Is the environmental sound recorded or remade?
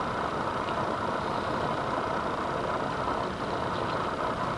recorded